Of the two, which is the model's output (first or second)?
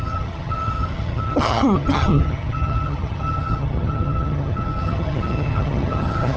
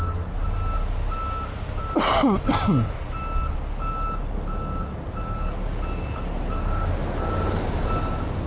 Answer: first